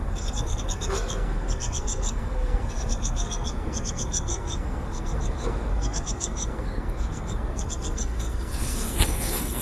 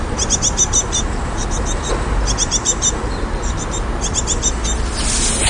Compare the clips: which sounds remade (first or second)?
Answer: first